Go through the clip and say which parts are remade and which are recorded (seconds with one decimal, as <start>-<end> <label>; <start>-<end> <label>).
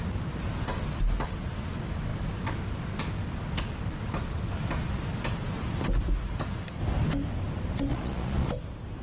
0.0-7.9 recorded; 7.9-8.5 remade; 8.5-9.0 recorded